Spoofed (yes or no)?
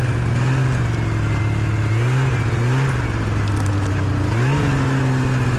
no